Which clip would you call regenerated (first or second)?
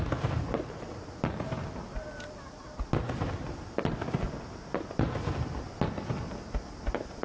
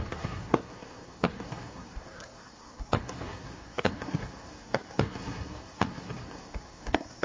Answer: second